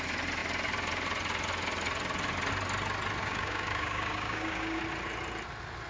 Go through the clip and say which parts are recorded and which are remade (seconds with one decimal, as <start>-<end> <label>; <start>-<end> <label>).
0.0-3.2 recorded; 3.2-4.8 remade; 4.8-5.9 recorded